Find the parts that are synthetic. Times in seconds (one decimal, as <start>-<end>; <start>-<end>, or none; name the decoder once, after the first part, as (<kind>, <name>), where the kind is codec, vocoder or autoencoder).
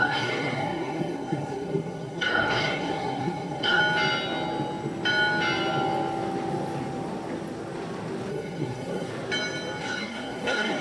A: 0.0-3.8 (codec, SNAC); 8.3-9.1; 9.8-10.8